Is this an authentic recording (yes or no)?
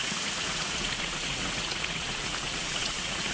no